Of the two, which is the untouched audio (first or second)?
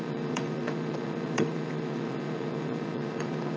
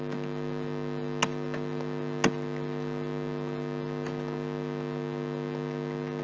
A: second